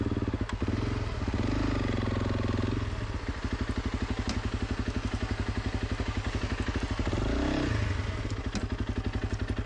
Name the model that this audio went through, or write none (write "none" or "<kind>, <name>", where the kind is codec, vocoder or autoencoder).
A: none